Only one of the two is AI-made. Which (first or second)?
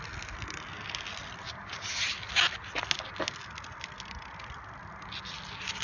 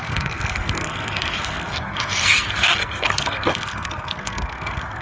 second